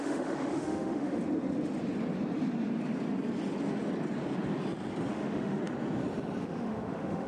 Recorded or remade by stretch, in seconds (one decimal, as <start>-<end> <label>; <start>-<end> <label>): 0.0-1.2 remade; 1.2-5.1 recorded; 5.1-5.6 remade; 5.6-6.4 recorded; 6.4-7.3 remade